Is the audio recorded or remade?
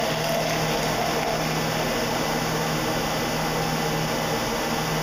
recorded